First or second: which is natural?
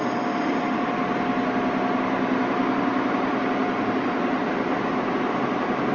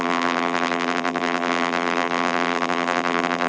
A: first